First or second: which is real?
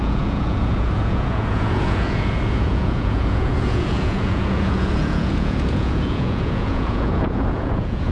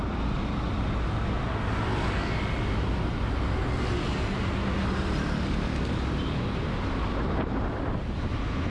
second